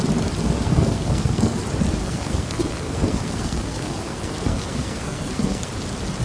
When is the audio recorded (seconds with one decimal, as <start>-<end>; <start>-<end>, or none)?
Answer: 0.0-0.4; 1.6-2.0; 5.7-6.2

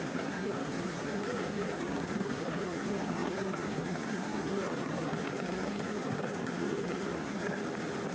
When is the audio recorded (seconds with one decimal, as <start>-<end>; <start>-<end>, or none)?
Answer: 7.6-8.1